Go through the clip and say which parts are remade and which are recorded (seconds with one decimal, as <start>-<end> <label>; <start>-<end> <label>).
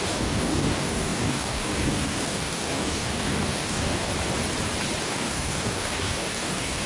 0.0-4.1 remade; 4.1-5.0 recorded; 5.0-6.9 remade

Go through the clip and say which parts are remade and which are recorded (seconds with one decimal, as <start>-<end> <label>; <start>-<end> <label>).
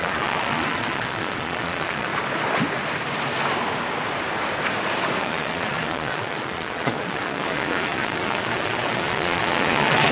0.0-2.1 remade; 2.1-5.2 recorded; 5.2-10.1 remade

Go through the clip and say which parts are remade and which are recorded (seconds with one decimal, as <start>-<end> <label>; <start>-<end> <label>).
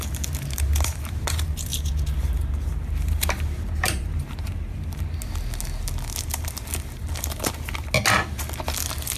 0.0-1.7 recorded; 1.7-5.1 remade; 5.1-9.2 recorded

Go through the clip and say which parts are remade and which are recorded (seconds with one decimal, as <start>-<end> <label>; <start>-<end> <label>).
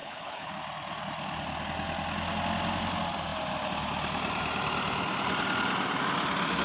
0.0-0.5 remade; 0.5-6.6 recorded